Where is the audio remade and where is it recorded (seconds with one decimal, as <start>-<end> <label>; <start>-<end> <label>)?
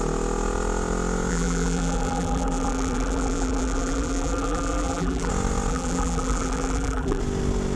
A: 0.0-1.3 recorded; 1.3-5.3 remade; 5.3-5.7 recorded; 5.7-7.2 remade; 7.2-7.8 recorded